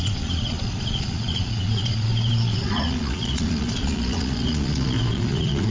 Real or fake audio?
fake